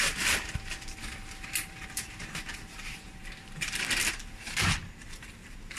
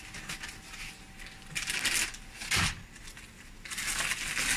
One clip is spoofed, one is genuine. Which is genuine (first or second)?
second